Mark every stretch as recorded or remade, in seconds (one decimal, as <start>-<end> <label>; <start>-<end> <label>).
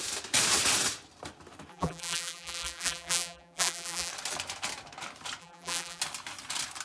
0.0-1.7 recorded; 1.7-4.1 remade; 4.1-5.4 recorded; 5.4-6.0 remade; 6.0-6.8 recorded